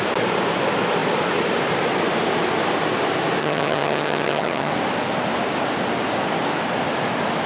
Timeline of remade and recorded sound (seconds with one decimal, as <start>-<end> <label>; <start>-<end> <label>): 0.0-3.4 recorded; 3.4-4.7 remade; 4.7-7.5 recorded